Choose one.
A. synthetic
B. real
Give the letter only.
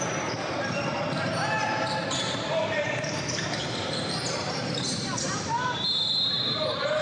A